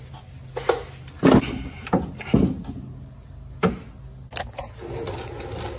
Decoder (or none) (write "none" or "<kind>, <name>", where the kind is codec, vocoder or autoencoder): none